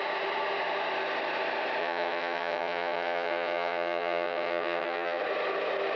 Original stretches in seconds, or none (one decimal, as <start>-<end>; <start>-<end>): 0.0-1.8; 5.2-6.0